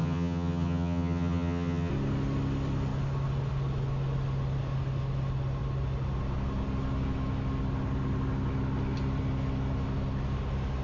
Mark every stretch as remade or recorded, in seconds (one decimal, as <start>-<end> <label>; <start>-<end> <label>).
0.0-1.9 remade; 1.9-10.8 recorded